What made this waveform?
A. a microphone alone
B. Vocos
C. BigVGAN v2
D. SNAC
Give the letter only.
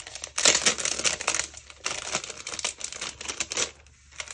A